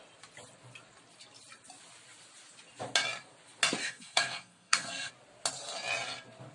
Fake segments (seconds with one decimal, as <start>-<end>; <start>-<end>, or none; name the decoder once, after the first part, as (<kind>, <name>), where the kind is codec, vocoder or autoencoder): 3.8-5.1 (codec, SNAC)